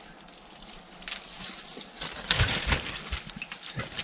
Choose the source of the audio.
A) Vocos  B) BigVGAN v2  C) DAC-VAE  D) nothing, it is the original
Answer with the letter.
D